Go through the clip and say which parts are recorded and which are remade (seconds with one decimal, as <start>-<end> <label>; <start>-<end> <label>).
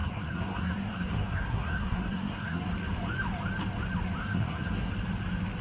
0.0-2.7 remade; 2.7-4.2 recorded; 4.2-4.9 remade; 4.9-5.6 recorded